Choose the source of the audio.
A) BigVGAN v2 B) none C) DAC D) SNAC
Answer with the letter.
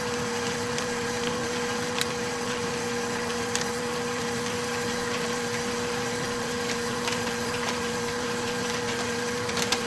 A